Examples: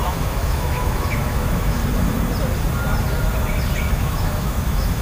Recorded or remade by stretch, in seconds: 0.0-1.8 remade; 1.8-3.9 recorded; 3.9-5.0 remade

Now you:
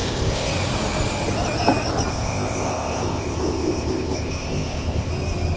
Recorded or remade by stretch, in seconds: 0.0-0.5 remade; 0.5-2.1 recorded; 2.1-5.1 remade; 5.1-5.6 recorded

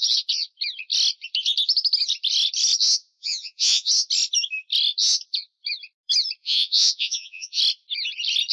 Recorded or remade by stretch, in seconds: 0.0-3.0 recorded; 3.0-3.9 remade; 3.9-6.4 recorded; 6.4-7.6 remade; 7.6-8.5 recorded

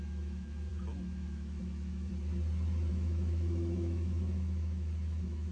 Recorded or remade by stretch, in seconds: 0.0-2.1 remade; 2.1-2.9 recorded; 2.9-5.5 remade